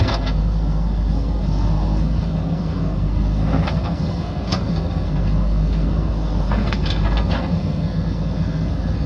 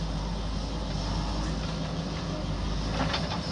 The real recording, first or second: second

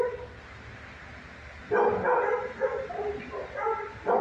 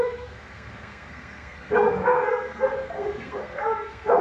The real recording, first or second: first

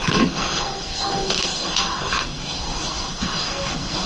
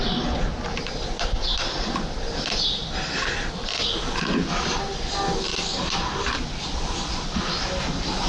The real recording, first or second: second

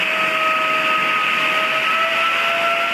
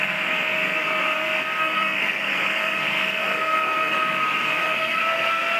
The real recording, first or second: first